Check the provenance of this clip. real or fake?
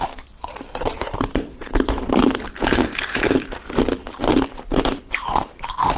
fake